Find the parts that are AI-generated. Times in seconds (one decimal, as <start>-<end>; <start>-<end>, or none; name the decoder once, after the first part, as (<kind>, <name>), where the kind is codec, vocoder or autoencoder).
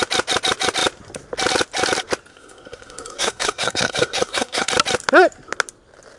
2.3-4.7 (codec, SNAC)